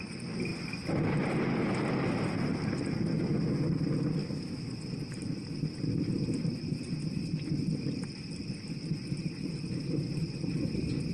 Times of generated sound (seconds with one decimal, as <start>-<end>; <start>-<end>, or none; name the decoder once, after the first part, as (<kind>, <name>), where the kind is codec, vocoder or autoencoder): 4.2-4.7 (autoencoder, DAC-VAE)